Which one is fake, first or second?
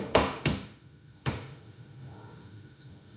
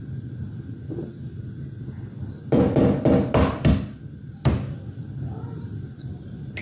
first